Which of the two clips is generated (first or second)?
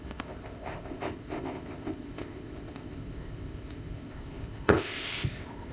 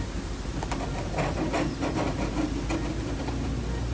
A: first